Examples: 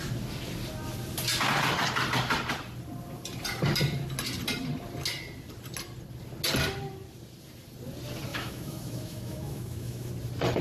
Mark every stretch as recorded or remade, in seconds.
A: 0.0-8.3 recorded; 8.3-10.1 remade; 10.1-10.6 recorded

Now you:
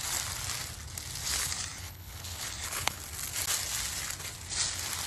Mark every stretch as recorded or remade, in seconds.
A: 0.0-1.2 recorded; 1.2-3.0 remade; 3.0-5.1 recorded

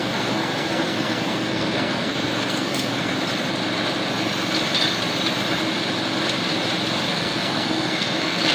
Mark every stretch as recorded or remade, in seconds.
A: 0.0-3.1 remade; 3.1-7.1 recorded; 7.1-8.5 remade